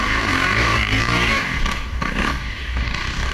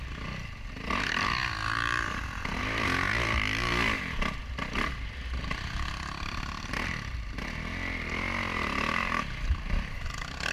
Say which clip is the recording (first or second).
second